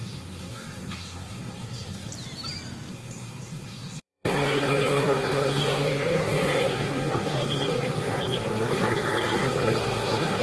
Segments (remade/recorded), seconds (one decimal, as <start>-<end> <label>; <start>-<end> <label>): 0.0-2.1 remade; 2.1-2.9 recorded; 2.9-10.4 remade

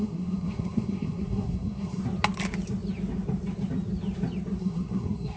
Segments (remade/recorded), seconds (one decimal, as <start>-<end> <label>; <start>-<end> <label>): 0.0-2.0 remade; 2.0-4.6 recorded; 4.6-5.4 remade

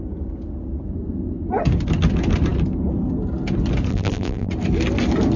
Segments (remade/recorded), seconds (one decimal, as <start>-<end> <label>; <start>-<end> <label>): 0.0-3.9 recorded; 3.9-4.5 remade; 4.5-5.4 recorded